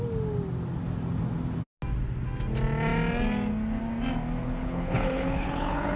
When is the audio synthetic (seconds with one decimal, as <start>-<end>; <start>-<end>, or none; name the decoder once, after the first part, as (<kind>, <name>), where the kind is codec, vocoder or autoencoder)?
4.4-6.0 (codec, HILCodec)